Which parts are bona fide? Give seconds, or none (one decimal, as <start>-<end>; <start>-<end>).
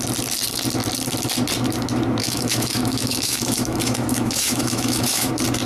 0.0-2.2; 5.3-5.7